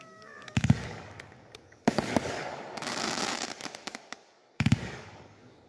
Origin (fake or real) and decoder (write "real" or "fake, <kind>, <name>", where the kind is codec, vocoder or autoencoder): fake, codec, DAC